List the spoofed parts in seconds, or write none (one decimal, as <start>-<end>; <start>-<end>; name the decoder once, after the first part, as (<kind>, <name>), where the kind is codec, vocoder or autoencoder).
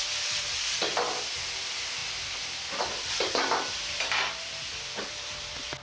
0.9-1.6 (vocoder, BigVGAN v2)